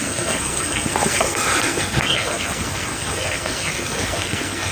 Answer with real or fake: fake